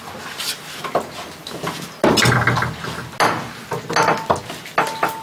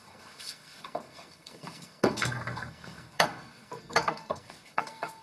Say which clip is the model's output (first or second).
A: second